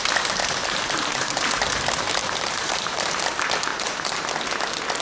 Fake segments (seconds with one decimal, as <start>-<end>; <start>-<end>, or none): 0.4-1.3; 2.2-3.2; 3.7-4.2